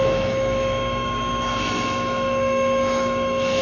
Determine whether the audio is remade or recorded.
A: remade